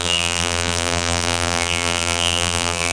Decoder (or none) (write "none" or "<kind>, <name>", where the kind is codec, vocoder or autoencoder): vocoder, BigVGAN v2